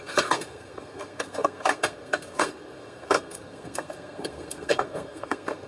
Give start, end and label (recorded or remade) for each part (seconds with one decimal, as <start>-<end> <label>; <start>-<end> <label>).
0.0-5.7 remade